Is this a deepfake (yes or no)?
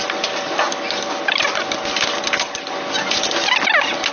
no